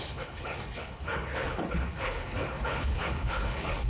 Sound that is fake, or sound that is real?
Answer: fake